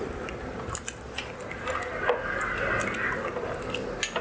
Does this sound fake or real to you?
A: real